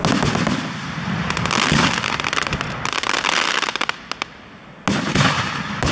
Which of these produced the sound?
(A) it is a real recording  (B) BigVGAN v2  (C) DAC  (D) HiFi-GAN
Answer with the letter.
A